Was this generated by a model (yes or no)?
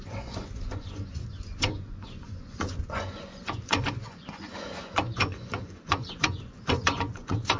yes